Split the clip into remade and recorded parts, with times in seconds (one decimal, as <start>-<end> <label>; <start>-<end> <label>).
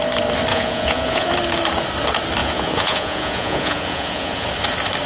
0.0-0.5 recorded; 0.5-1.3 remade; 1.3-2.4 recorded; 2.4-4.5 remade; 4.5-5.1 recorded